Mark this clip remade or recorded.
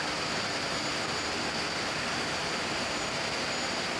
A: recorded